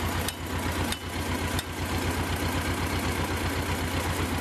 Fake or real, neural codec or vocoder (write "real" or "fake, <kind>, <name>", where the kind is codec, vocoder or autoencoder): real